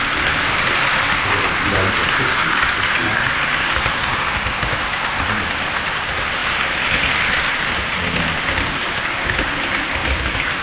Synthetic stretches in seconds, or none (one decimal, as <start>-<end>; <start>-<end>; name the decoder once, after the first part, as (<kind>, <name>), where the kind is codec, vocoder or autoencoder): 4.0-4.9 (codec, DAC); 10.0-10.6